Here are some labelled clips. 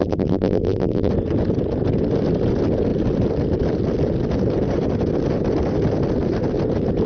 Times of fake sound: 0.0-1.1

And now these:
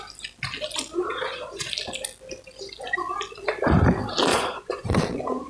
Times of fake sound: 0.9-1.7; 4.3-5.5